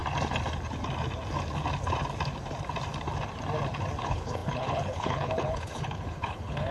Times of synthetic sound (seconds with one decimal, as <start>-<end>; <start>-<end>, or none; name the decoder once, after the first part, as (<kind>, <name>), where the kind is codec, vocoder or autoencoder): 4.0-6.7 (codec, HILCodec)